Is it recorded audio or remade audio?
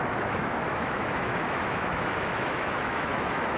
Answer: remade